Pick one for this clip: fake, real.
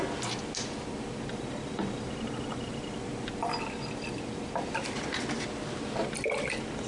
real